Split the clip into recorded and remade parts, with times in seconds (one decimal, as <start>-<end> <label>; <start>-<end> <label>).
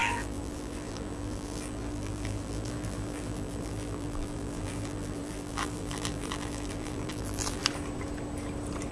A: 0.0-7.6 remade; 7.6-8.9 recorded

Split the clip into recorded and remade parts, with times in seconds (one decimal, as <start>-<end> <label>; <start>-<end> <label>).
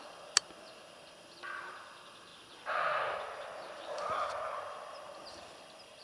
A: 0.0-6.0 recorded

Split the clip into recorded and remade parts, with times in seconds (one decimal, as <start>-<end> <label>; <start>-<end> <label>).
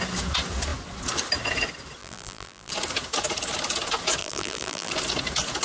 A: 0.0-2.0 recorded; 2.0-2.7 remade; 2.7-4.2 recorded; 4.2-4.9 remade; 4.9-5.6 recorded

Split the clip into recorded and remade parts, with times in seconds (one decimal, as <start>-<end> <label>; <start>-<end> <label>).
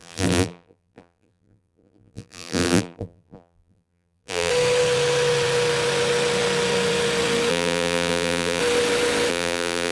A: 0.0-4.5 remade; 4.5-7.5 recorded; 7.5-8.6 remade; 8.6-9.3 recorded; 9.3-9.9 remade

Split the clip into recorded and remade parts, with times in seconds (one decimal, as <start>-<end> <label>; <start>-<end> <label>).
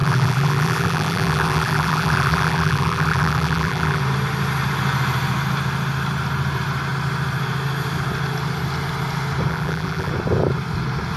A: 0.0-4.0 remade; 4.0-9.5 recorded; 9.5-10.1 remade; 10.1-11.2 recorded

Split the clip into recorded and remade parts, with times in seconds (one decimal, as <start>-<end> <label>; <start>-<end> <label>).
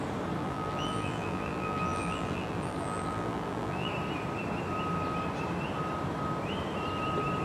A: 0.0-0.4 recorded; 0.4-3.9 remade; 3.9-7.4 recorded